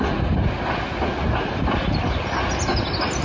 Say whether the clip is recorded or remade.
recorded